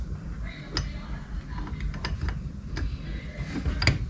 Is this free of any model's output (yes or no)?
yes